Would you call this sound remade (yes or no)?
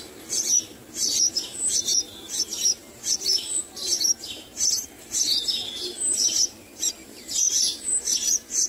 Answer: yes